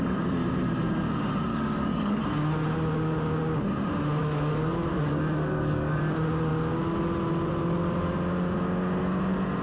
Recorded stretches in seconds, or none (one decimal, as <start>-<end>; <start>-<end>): 0.0-1.5; 2.2-4.2; 6.0-9.6